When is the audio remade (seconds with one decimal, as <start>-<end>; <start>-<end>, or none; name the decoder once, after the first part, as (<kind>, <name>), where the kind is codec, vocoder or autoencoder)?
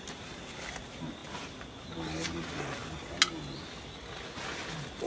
none